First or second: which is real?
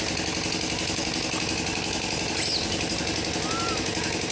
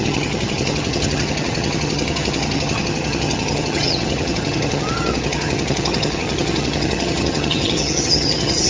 first